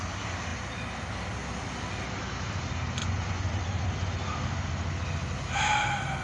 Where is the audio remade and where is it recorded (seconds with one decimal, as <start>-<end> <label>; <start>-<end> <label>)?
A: 0.0-3.0 recorded; 3.0-3.5 remade; 3.5-6.2 recorded